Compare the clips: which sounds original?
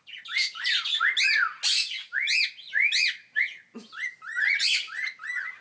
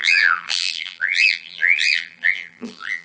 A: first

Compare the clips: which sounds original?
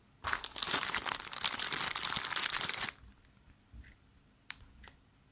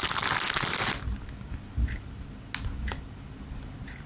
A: second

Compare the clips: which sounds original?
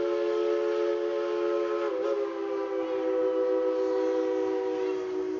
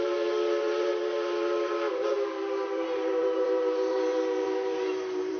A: first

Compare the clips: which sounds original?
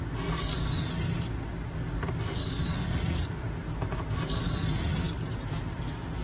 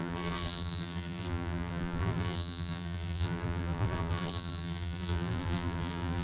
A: first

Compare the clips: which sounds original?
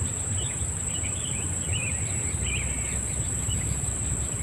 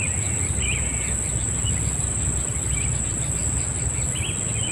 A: second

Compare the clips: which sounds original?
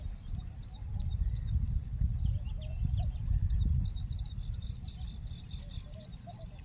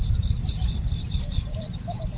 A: first